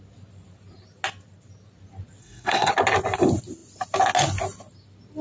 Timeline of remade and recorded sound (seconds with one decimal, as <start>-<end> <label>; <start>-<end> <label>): 0.0-2.2 recorded; 2.2-2.7 remade; 2.7-5.2 recorded